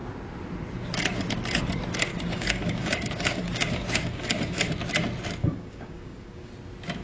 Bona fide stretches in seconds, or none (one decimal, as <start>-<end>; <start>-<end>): 0.0-2.1; 4.6-5.4; 6.5-7.0